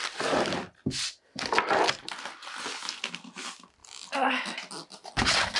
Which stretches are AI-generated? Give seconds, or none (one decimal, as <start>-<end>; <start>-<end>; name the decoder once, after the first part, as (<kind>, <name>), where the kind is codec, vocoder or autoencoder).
none

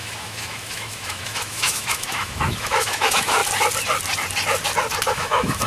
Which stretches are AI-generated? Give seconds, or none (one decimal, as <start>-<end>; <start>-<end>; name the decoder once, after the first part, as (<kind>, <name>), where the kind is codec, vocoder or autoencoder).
0.0-3.4 (autoencoder, DAC-VAE); 5.1-5.7

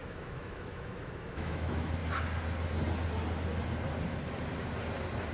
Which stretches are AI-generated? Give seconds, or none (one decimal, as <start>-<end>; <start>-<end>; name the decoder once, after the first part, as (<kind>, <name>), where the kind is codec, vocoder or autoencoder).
0.0-2.0 (autoencoder, DAC-VAE)